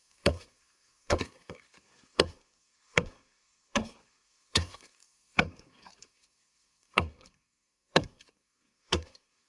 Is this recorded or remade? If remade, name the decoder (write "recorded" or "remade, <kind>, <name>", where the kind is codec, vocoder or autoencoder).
remade, codec, SNAC